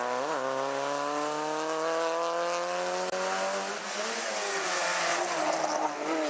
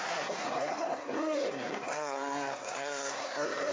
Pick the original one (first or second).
first